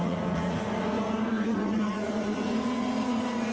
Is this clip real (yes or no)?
no